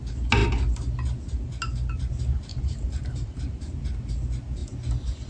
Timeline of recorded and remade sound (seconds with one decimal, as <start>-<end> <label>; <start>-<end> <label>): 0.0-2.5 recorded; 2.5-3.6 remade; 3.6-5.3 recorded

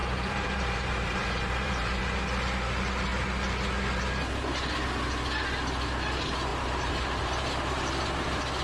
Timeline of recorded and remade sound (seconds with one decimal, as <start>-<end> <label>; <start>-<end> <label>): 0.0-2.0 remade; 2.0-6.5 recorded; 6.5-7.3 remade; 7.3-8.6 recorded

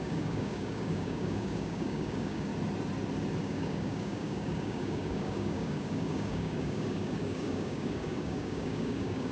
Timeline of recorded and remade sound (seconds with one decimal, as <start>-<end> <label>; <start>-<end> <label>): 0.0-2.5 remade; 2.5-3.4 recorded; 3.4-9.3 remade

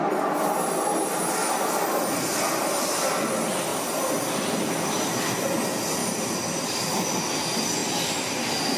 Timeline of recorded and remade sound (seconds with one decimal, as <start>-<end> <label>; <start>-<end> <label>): 0.0-3.7 recorded; 3.7-4.8 remade; 4.8-6.0 recorded; 6.0-6.8 remade; 6.8-8.8 recorded

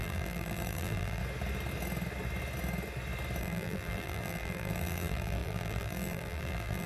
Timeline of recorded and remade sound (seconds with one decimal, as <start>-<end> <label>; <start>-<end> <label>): 0.0-1.2 remade; 1.2-3.4 recorded; 3.4-6.9 remade

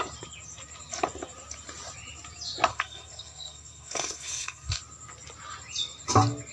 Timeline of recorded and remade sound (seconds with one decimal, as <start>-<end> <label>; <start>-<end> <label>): 0.0-2.7 recorded; 2.7-4.8 remade; 4.8-6.5 recorded

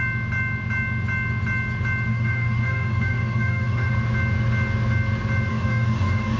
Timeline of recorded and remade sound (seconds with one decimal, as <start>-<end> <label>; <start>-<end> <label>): 0.0-2.1 recorded; 2.1-3.9 remade; 3.9-5.5 recorded; 5.5-6.4 remade